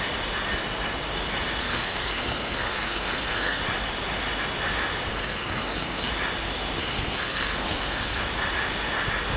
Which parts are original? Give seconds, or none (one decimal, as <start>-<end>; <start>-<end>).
0.0-1.6; 3.6-5.1; 6.1-6.8; 8.2-9.4